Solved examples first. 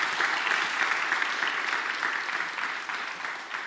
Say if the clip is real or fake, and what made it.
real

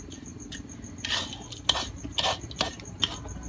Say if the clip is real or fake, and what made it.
real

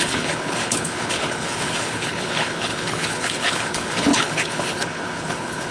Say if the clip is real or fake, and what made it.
fake, codec, HILCodec